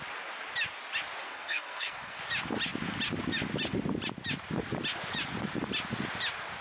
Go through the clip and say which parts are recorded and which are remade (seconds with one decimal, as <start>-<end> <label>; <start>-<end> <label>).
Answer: 0.0-1.2 recorded; 1.2-2.2 remade; 2.2-6.6 recorded